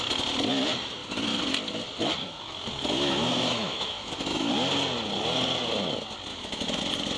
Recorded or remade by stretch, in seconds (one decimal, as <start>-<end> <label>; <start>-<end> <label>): 0.0-2.2 recorded; 2.2-4.5 remade; 4.5-6.3 recorded; 6.3-6.8 remade; 6.8-7.2 recorded